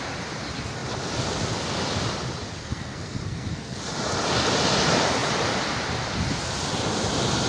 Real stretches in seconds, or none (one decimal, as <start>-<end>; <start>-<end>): 0.0-2.6; 3.8-7.5